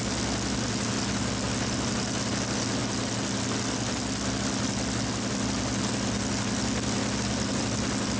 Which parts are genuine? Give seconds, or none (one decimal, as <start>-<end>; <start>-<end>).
0.0-8.2